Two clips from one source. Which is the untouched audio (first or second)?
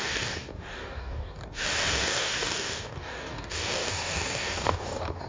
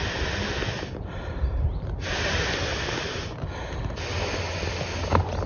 second